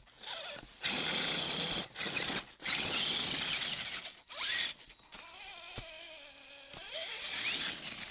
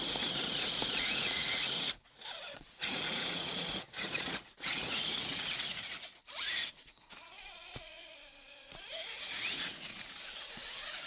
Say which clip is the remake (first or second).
second